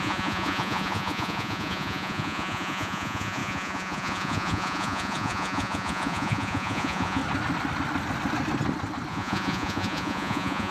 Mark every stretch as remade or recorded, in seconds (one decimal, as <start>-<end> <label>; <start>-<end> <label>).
0.0-7.2 remade; 7.2-9.1 recorded; 9.1-10.7 remade